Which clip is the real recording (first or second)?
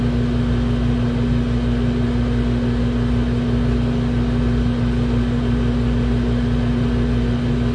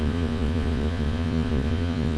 first